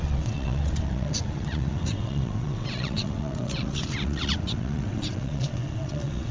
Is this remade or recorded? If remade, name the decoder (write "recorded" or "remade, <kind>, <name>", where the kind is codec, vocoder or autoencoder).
remade, vocoder, WaveNeXt